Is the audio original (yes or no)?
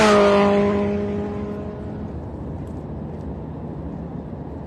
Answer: yes